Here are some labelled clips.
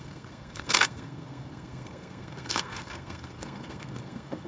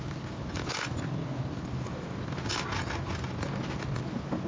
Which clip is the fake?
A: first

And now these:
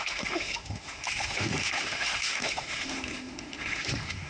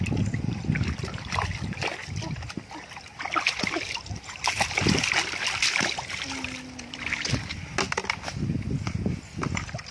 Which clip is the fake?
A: first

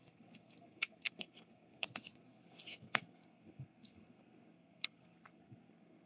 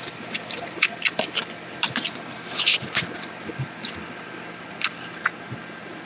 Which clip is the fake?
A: first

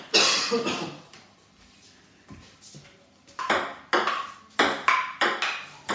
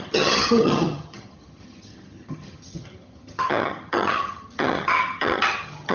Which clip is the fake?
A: second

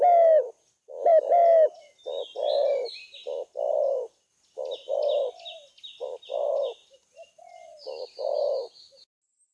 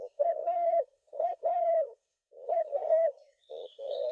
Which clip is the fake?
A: second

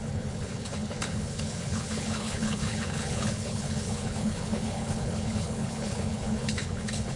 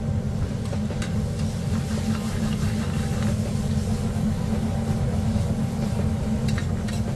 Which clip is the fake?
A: first